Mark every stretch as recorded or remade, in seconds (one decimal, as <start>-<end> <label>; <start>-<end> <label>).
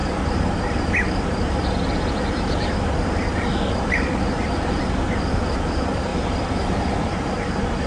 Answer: 0.0-4.7 remade; 4.7-6.1 recorded; 6.1-7.4 remade; 7.4-7.9 recorded